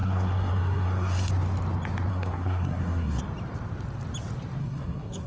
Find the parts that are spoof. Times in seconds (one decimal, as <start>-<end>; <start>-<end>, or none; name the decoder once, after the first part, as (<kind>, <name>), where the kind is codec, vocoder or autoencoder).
0.0-1.3 (codec, SNAC); 2.1-3.2; 4.6-5.3

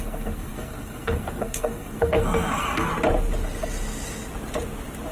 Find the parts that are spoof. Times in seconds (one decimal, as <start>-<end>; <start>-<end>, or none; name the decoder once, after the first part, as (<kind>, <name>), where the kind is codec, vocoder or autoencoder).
0.0-2.9 (codec, SNAC)

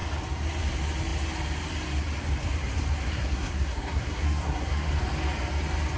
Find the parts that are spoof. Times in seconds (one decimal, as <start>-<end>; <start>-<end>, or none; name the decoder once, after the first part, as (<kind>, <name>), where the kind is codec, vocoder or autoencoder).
3.1-4.9 (codec, SNAC)